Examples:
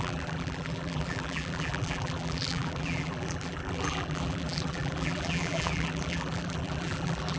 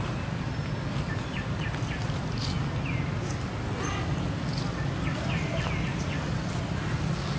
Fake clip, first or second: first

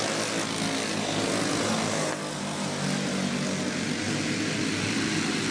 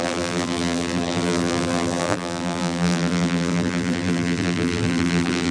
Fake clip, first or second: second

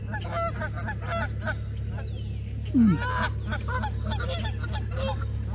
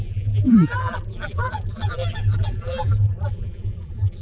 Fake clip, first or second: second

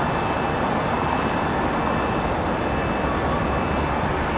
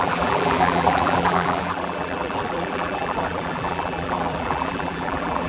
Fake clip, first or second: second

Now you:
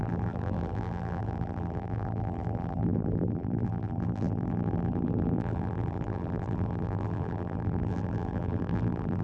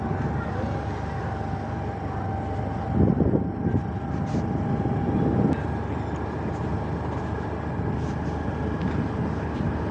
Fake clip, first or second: first